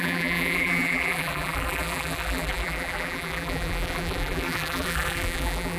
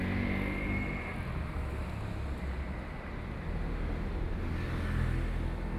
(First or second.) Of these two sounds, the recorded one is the second